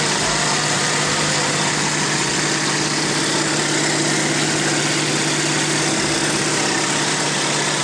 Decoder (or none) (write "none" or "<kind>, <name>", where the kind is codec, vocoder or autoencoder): none